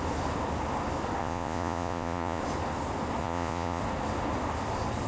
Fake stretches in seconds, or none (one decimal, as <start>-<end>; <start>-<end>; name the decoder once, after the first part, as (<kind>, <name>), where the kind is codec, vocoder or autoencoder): 1.2-2.4 (vocoder, Vocos); 3.2-3.8